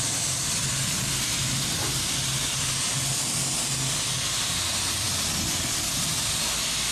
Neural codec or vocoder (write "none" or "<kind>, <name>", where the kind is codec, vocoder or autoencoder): none